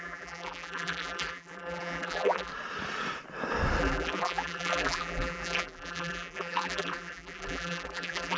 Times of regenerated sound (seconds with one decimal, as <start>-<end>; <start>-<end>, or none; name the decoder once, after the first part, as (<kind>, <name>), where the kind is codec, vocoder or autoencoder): 0.0-2.5 (vocoder, BigVGAN v2); 3.8-8.4

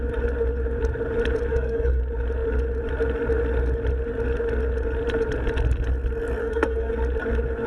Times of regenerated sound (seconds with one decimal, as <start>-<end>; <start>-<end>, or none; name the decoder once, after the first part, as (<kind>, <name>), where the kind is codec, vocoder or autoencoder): 1.5-2.0 (codec, SNAC); 6.4-6.9

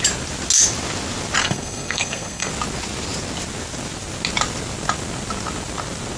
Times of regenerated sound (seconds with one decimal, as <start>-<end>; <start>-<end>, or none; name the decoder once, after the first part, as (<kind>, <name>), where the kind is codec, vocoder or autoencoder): 1.4-2.5 (codec, SNAC)

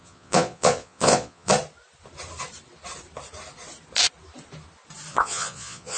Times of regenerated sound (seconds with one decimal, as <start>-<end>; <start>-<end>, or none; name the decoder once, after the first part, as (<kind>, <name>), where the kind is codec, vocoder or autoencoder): 0.0-1.5 (vocoder, Vocos); 5.1-6.0

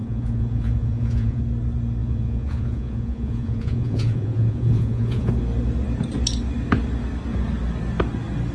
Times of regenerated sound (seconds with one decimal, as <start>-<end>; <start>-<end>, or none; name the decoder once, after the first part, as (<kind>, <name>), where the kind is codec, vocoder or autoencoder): 0.0-1.4 (vocoder, Vocos); 2.0-5.3